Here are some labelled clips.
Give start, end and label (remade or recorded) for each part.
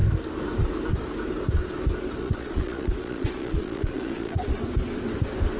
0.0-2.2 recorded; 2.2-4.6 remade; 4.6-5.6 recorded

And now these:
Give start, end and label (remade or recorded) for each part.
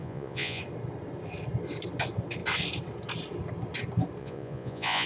0.0-0.6 remade; 0.6-4.2 recorded; 4.2-5.1 remade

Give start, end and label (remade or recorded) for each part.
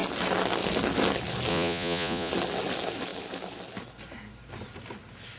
0.0-1.5 recorded; 1.5-2.3 remade; 2.3-5.4 recorded